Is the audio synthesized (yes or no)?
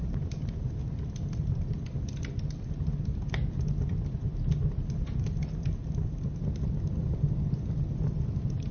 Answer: no